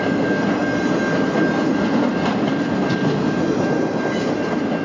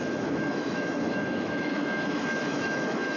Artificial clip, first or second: second